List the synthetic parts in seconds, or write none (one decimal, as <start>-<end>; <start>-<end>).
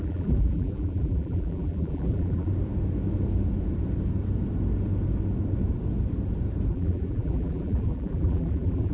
0.0-2.5; 6.7-8.9